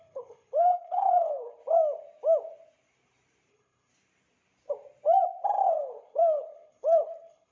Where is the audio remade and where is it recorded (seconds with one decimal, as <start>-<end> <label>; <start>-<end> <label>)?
0.0-1.6 remade; 1.6-3.5 recorded; 3.5-3.9 remade; 3.9-5.7 recorded; 5.7-7.5 remade